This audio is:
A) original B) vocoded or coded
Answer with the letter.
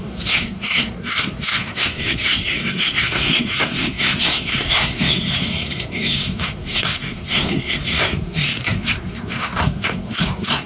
B